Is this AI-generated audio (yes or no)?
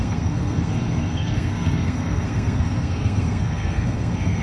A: yes